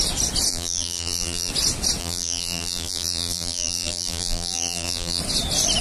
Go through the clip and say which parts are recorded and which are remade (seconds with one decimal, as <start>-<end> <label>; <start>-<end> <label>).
0.0-0.5 recorded; 0.5-1.5 remade; 1.5-2.0 recorded; 2.0-5.2 remade; 5.2-5.8 recorded